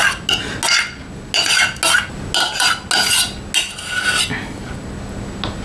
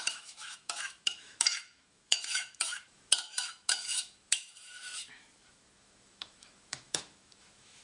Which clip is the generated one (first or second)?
second